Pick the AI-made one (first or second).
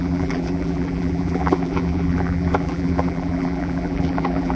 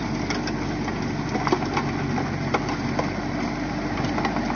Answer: first